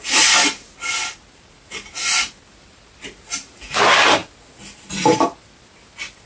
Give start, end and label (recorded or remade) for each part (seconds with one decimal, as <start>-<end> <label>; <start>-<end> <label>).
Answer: 0.0-6.3 recorded